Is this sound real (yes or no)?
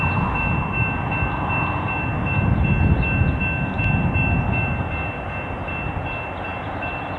yes